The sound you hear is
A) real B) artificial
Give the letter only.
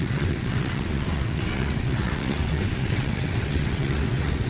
B